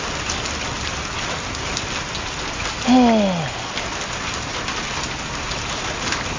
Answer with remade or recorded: recorded